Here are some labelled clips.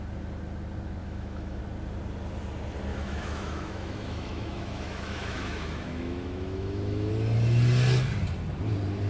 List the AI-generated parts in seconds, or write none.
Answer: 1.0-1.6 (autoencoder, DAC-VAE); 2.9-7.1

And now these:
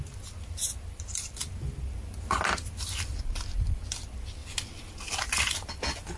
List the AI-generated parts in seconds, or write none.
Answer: none

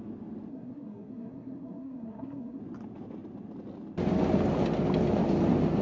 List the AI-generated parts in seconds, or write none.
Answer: 0.5-2.6 (codec, SNAC)

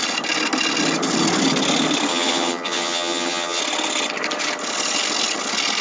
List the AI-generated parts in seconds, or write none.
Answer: 2.1-3.6 (vocoder, HiFi-GAN)

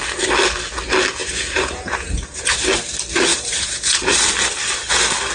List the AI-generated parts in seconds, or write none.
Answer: 1.2-2.5 (vocoder, Vocos); 3.3-4.1